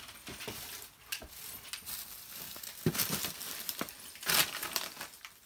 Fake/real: real